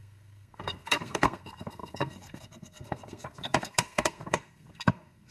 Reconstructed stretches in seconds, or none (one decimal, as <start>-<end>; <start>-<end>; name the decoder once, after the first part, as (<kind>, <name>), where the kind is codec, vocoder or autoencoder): 0.0-5.3 (codec, SNAC)